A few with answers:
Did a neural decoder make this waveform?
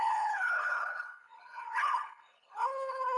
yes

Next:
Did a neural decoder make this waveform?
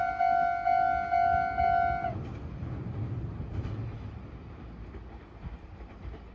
no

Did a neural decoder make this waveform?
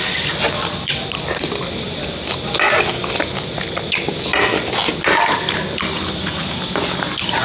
no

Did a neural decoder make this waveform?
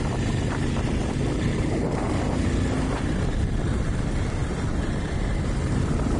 yes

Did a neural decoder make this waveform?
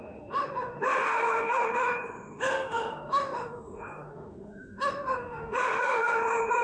yes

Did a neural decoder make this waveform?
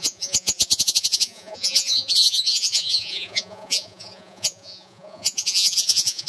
yes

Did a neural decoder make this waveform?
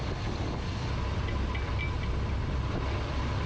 no